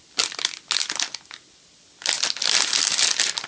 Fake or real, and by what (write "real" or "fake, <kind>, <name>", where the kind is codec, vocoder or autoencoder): real